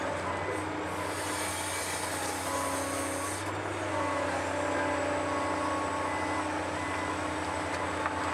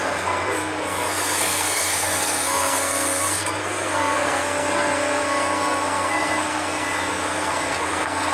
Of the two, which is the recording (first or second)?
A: first